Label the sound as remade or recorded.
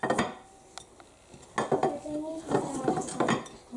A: recorded